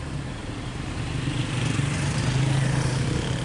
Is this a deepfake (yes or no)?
yes